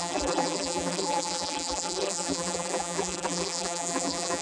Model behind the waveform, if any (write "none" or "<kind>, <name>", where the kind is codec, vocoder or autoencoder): vocoder, BigVGAN v2